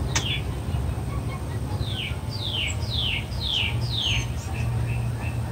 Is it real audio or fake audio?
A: real